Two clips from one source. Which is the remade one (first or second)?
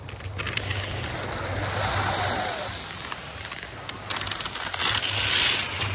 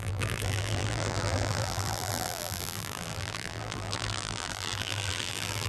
second